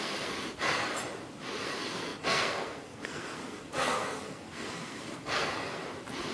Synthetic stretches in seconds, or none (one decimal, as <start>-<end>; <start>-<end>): 0.0-0.9; 1.6-5.8

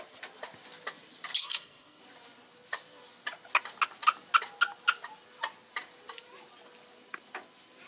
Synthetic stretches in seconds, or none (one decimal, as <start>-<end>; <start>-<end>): 1.4-2.0

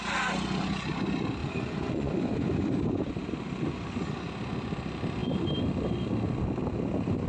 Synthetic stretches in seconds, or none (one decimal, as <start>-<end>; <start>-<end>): 1.4-2.2

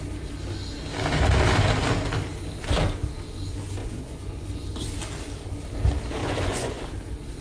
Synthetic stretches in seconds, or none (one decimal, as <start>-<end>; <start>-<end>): 3.8-4.5; 6.2-6.8

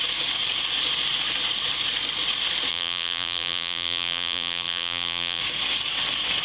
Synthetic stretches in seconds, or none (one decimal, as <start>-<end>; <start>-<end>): 2.7-5.4

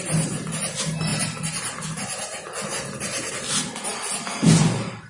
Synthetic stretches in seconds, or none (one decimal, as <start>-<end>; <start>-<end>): none

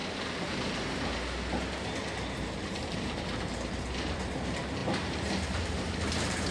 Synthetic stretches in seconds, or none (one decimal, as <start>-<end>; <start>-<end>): 2.1-6.5